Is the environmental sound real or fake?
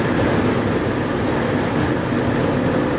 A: real